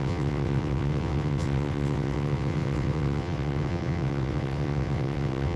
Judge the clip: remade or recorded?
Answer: remade